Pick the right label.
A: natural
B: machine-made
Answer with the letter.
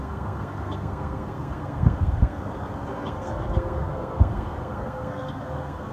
B